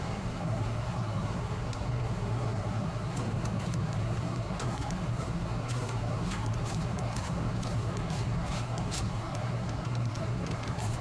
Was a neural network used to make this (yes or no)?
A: yes